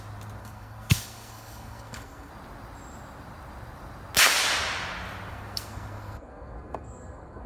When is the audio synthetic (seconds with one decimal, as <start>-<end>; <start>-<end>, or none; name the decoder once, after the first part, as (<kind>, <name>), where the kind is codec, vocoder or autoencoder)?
0.4-2.3 (codec, SNAC); 5.3-7.5